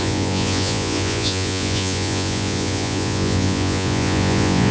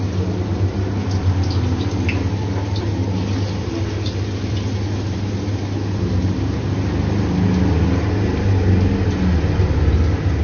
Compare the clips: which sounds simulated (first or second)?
first